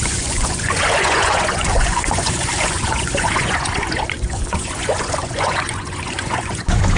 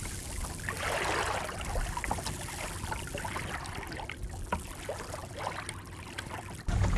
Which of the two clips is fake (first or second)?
first